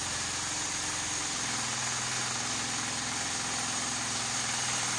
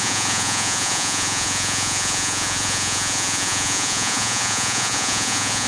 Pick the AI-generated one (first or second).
second